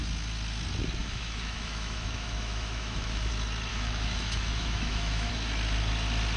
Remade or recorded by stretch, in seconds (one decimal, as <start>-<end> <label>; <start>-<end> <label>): 0.0-1.0 recorded; 1.0-3.3 remade; 3.3-3.7 recorded; 3.7-5.3 remade; 5.3-6.4 recorded